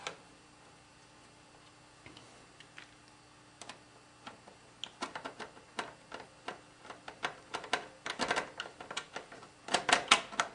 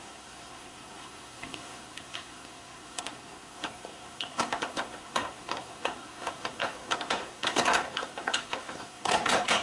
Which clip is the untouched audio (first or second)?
first